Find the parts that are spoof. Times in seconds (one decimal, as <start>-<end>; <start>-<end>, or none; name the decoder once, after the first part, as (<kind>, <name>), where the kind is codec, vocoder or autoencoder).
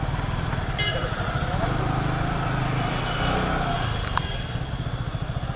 none